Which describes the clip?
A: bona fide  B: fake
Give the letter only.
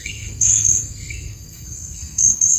B